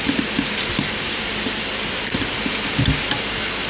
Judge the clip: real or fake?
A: real